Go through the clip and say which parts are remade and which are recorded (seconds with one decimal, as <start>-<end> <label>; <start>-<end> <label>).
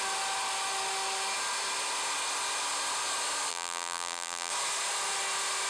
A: 0.0-3.5 recorded; 3.5-4.5 remade; 4.5-5.7 recorded